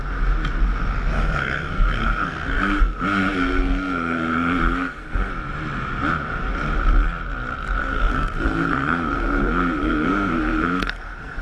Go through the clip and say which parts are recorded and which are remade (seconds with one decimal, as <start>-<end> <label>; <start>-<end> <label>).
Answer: 0.0-1.1 recorded; 1.1-5.3 remade; 5.3-7.8 recorded; 7.8-11.4 remade